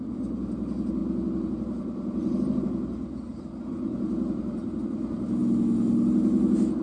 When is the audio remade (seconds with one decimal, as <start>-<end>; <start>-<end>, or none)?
none